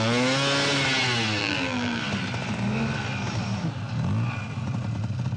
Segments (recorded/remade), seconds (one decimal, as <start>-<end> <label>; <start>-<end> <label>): 0.0-1.4 recorded; 1.4-2.0 remade; 2.0-5.4 recorded